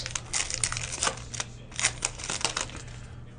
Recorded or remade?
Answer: recorded